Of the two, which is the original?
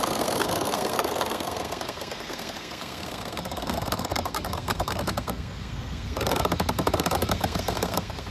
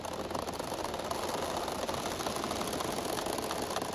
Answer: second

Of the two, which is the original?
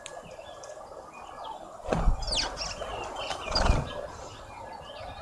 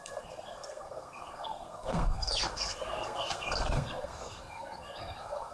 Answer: first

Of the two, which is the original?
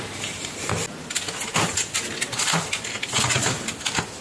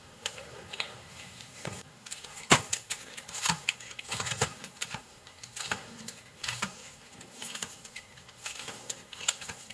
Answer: first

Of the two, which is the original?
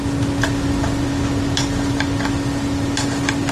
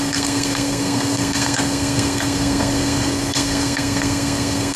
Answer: first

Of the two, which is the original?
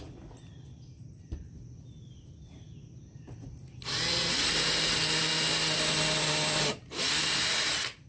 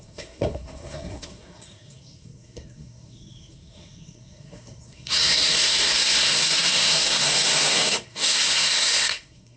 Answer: first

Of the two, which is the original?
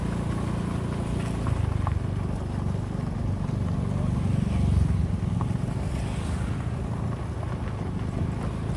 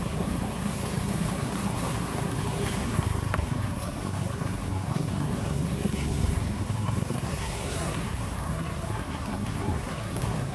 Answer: first